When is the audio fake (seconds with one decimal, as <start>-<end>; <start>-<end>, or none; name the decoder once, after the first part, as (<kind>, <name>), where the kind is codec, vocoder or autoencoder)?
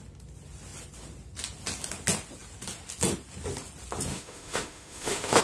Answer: 4.1-5.4 (autoencoder, DAC-VAE)